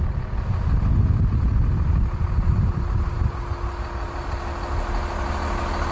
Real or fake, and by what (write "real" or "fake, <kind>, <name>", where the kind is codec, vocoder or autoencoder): real